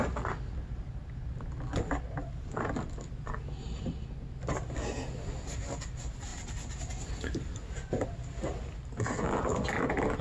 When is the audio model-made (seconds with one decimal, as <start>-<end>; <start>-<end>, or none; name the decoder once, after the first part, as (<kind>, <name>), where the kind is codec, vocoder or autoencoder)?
none